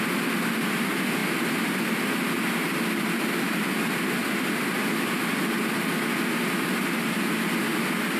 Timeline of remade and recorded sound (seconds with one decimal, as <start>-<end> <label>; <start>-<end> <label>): 0.0-8.2 recorded